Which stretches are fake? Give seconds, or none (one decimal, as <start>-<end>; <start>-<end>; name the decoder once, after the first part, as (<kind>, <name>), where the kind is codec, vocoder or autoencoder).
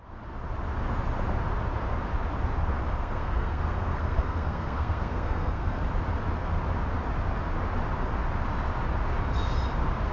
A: 2.8-5.8 (codec, SNAC)